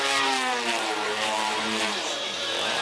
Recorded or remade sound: remade